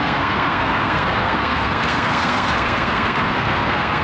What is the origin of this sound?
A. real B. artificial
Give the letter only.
B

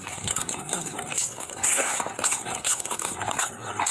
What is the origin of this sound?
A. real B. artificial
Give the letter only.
B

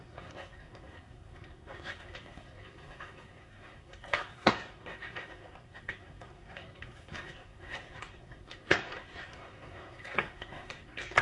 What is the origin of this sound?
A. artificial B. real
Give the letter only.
A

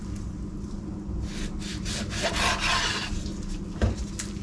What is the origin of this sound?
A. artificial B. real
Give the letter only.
B